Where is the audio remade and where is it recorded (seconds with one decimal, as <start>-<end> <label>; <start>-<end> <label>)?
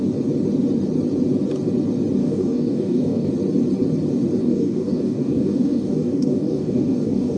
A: 0.0-2.2 recorded; 2.2-3.3 remade; 3.3-4.4 recorded; 4.4-7.4 remade